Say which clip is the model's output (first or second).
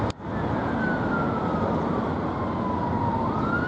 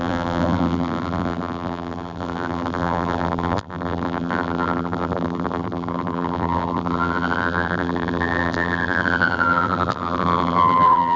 second